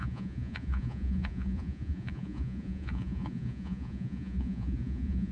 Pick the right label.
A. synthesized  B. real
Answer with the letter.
A